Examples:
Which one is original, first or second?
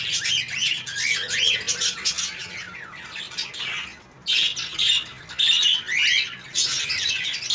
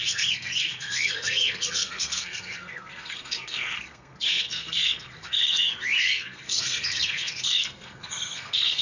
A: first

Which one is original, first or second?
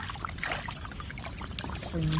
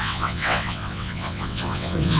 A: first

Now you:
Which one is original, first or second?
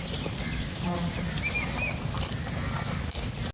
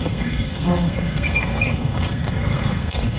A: first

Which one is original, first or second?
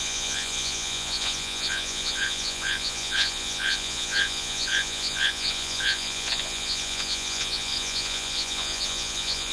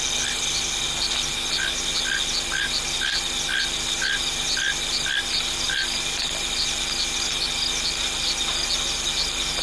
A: second